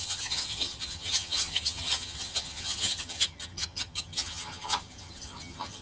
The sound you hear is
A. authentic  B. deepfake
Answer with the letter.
B